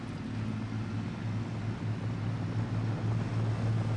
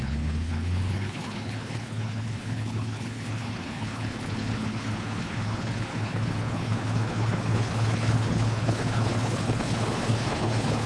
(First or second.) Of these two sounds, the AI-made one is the second